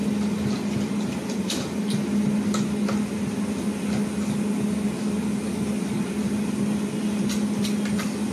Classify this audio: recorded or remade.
recorded